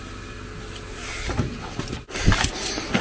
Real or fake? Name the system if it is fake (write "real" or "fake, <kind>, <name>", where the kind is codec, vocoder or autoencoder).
real